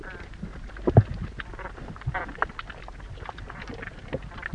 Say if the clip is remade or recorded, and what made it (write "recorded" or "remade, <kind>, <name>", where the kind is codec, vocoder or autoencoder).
recorded